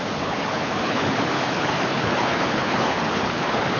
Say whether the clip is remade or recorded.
remade